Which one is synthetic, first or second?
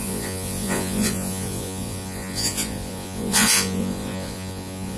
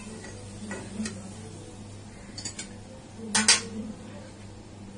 first